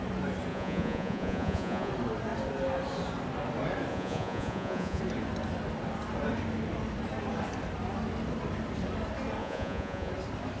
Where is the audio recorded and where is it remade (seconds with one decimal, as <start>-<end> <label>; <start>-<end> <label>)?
0.0-0.5 recorded; 0.5-1.9 remade; 1.9-3.9 recorded; 3.9-5.0 remade; 5.0-9.4 recorded; 9.4-10.1 remade; 10.1-10.6 recorded